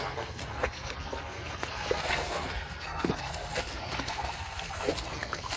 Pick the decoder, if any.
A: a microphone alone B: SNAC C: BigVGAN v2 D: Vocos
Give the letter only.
B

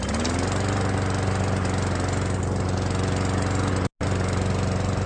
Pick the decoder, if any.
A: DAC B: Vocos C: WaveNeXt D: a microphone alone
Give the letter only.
D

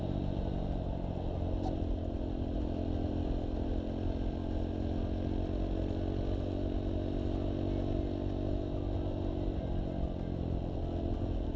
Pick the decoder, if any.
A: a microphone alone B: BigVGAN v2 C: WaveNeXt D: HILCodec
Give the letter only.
A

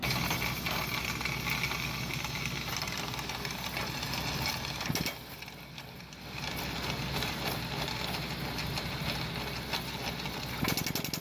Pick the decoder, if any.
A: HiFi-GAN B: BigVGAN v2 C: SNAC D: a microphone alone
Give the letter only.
D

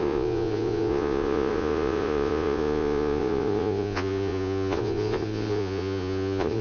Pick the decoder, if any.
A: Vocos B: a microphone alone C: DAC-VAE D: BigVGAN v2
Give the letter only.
A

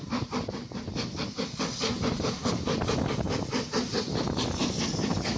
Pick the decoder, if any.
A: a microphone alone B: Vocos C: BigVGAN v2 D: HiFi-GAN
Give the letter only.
A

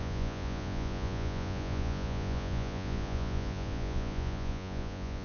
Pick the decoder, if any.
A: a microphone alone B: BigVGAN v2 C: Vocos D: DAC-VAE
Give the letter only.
C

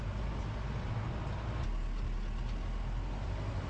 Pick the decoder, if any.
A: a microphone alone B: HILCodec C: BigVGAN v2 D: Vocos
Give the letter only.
A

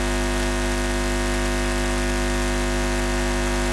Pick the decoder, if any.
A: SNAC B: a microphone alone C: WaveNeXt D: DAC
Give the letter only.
B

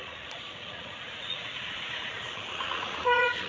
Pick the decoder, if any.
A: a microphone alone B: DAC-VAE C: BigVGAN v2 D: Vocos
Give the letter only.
D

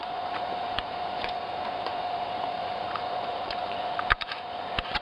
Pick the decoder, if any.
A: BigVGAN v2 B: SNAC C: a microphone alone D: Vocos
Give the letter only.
D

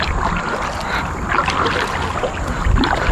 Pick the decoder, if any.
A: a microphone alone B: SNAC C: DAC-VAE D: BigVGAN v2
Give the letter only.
A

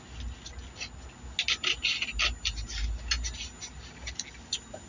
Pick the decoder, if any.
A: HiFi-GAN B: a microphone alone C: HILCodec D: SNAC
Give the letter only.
B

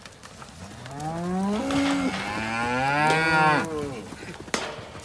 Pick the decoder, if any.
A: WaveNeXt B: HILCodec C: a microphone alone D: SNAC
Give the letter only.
C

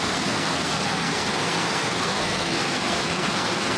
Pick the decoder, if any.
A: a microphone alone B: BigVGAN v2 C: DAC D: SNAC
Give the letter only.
D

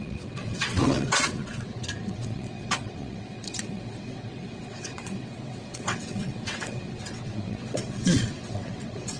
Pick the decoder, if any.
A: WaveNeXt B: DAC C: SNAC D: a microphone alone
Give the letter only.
A